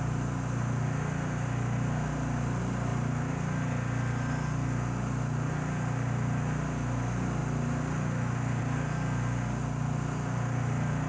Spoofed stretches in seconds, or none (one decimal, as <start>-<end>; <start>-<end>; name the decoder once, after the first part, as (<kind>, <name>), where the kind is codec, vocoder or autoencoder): none